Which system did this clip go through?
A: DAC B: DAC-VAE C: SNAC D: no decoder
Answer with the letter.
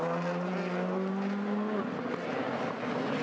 D